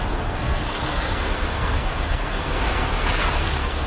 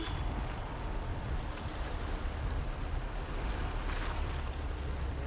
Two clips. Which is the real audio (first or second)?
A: second